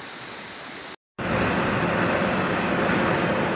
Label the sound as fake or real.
real